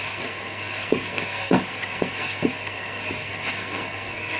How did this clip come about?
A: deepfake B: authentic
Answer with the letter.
A